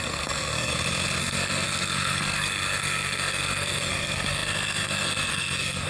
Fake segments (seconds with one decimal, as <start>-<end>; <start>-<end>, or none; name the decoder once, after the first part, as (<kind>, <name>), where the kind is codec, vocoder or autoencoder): 0.0-0.7 (codec, SNAC); 1.2-5.9